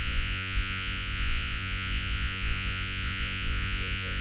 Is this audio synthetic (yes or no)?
yes